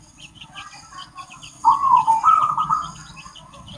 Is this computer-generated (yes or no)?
yes